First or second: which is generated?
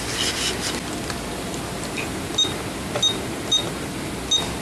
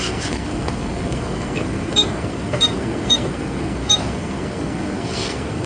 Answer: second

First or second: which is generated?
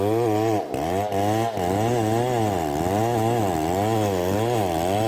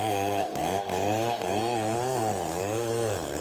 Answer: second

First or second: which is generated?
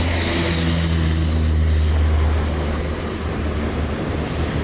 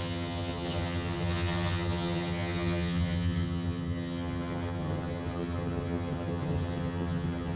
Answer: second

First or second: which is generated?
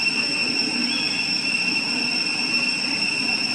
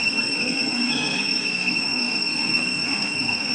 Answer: second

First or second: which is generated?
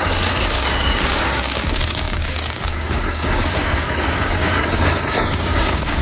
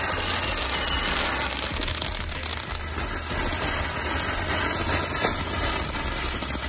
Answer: first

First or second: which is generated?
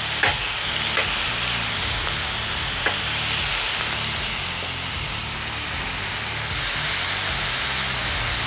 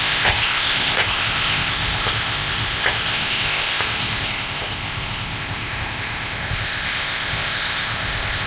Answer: second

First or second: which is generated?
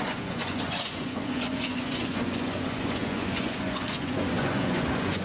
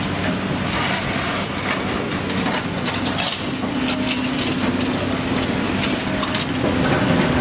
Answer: first